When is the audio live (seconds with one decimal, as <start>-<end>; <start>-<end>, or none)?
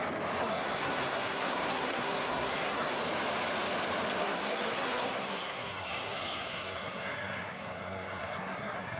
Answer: 0.0-0.4; 3.0-4.2